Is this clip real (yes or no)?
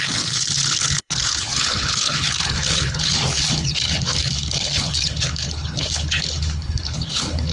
no